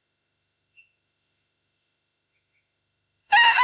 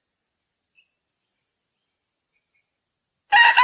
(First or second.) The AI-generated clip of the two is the first